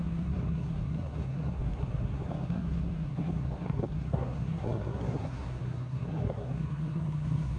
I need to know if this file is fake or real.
fake